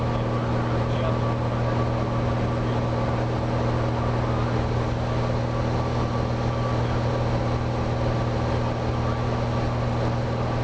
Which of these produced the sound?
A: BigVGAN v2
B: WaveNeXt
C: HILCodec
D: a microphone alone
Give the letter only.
D